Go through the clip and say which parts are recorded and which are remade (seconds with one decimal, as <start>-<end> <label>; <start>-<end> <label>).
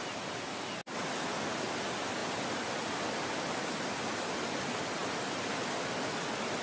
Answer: 0.0-6.6 recorded